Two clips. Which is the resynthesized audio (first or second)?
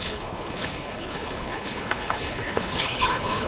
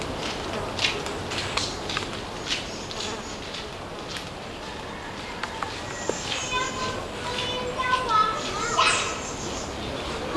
first